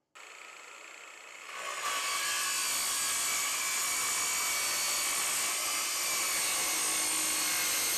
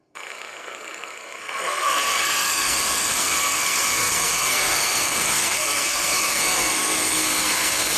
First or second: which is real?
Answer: first